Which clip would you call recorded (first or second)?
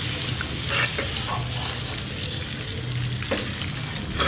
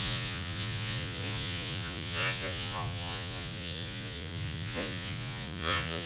first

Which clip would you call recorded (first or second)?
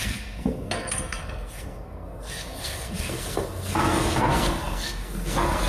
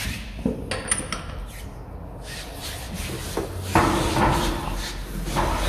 second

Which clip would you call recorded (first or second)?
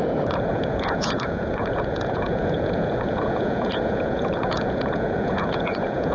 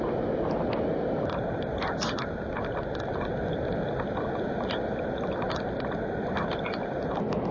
second